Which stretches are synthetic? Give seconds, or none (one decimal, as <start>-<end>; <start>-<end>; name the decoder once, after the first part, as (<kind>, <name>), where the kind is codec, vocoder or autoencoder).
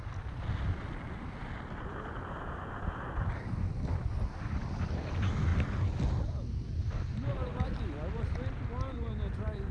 none